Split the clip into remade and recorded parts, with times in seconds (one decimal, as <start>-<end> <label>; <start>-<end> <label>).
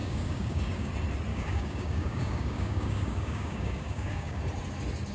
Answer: 0.0-0.9 remade; 0.9-1.3 recorded; 1.3-4.4 remade; 4.4-5.1 recorded